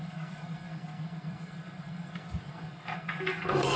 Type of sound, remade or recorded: remade